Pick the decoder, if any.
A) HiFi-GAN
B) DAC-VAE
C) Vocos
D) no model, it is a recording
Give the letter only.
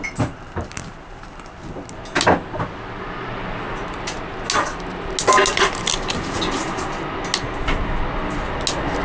D